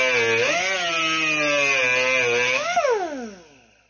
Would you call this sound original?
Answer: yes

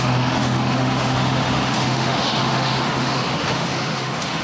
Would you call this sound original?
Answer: no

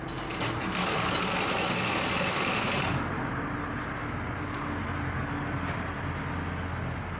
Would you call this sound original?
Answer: yes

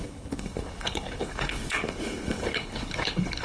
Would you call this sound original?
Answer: no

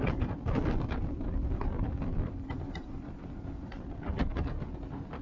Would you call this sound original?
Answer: no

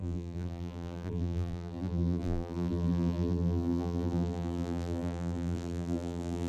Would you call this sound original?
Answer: no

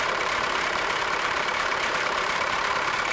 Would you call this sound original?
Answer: no